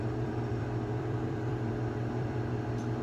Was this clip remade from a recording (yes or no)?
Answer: yes